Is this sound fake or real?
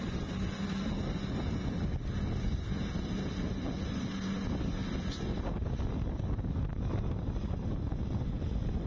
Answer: real